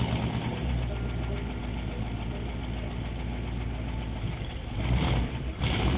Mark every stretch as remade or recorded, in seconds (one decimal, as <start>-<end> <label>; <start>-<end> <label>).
0.0-6.0 recorded